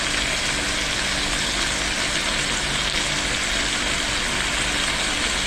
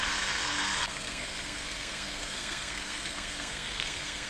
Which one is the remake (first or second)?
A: second